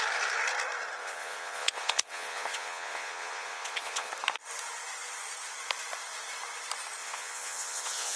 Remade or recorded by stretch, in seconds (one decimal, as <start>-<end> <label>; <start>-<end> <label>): 0.0-1.0 recorded; 1.0-4.1 remade; 4.1-7.0 recorded; 7.0-8.2 remade